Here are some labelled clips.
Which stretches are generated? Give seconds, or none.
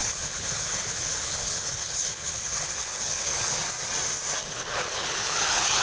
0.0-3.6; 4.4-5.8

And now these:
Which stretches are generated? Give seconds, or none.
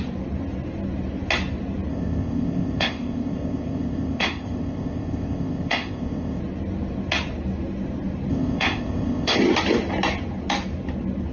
1.9-6.4; 8.3-9.4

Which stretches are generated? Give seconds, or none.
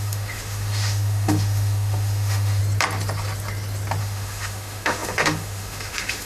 0.0-2.6; 4.0-6.3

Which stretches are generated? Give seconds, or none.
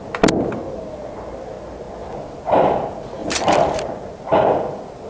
none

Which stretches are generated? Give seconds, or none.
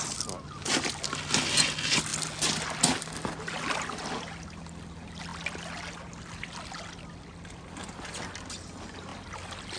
none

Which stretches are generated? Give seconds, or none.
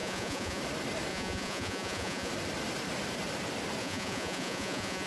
0.0-0.6; 1.1-2.3; 3.8-5.1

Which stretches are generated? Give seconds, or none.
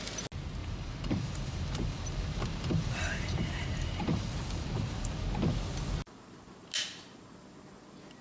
0.6-5.2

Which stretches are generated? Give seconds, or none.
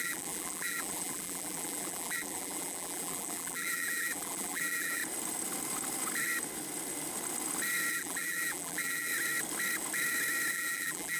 0.0-5.0; 7.9-9.1; 10.5-11.2